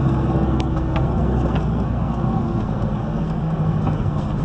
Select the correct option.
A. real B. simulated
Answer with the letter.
B